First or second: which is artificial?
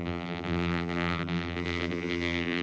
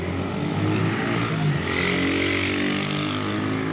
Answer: first